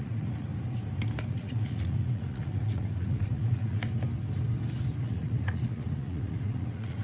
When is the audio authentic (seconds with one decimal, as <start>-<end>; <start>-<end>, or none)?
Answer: 0.5-1.3; 3.8-5.0